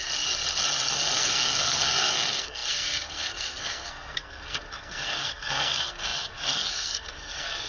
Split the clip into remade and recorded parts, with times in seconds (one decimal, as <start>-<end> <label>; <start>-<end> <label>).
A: 0.0-0.9 recorded; 0.9-7.7 remade